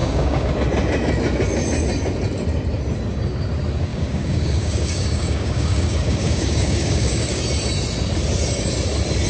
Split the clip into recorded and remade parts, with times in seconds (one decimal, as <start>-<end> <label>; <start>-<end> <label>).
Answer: 0.0-0.5 remade; 0.5-3.9 recorded; 3.9-7.4 remade; 7.4-9.3 recorded

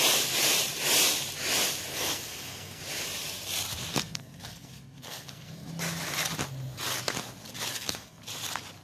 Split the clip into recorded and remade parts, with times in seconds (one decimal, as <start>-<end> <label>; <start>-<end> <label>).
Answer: 0.0-1.9 recorded; 1.9-2.8 remade; 2.8-3.9 recorded; 3.9-5.7 remade; 5.7-7.7 recorded; 7.7-8.2 remade; 8.2-8.8 recorded

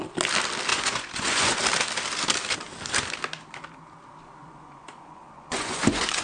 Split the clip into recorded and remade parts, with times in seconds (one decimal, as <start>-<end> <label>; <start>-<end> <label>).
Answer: 0.0-0.7 recorded; 0.7-1.6 remade; 1.6-4.4 recorded; 4.4-6.2 remade

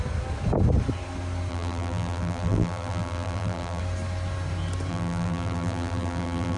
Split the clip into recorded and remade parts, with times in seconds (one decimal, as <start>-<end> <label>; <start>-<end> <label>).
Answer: 0.0-1.5 recorded; 1.5-3.8 remade; 3.8-4.9 recorded; 4.9-6.6 remade

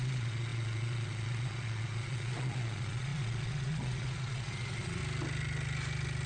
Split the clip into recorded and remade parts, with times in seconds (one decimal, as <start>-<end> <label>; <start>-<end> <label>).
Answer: 0.0-5.0 remade; 5.0-6.3 recorded